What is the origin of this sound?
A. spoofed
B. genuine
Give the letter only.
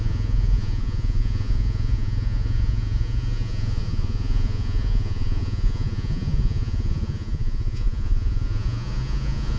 A